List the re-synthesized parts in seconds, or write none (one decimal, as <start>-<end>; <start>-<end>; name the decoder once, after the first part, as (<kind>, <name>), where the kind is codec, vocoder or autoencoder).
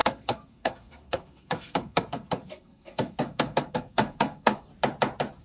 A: 0.0-4.7 (codec, SNAC)